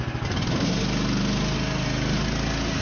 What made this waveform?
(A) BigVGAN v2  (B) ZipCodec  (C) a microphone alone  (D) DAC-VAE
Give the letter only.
C